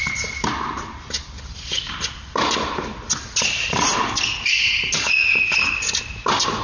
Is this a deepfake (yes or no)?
no